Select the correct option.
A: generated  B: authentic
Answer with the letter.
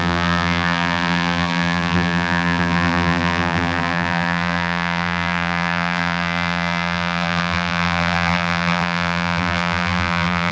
A